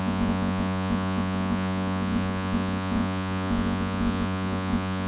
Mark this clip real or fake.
fake